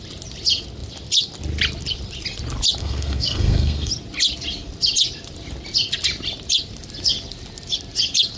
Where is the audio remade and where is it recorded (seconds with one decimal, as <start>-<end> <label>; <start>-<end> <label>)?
0.0-2.8 recorded; 2.8-3.9 remade; 3.9-8.4 recorded

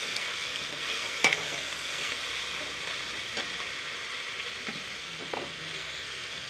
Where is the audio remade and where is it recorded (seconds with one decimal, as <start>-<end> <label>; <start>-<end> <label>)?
0.0-2.2 remade; 2.2-5.0 recorded; 5.0-6.5 remade

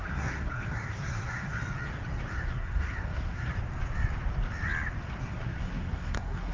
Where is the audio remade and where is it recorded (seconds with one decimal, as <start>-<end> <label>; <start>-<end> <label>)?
0.0-1.6 remade; 1.6-2.3 recorded; 2.3-3.5 remade; 3.5-5.2 recorded; 5.2-6.5 remade

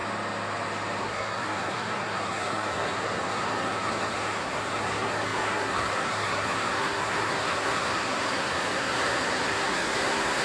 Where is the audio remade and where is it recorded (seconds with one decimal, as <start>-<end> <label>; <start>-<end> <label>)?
0.0-1.0 recorded; 1.0-10.4 remade